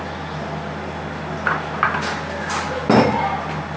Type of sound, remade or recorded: recorded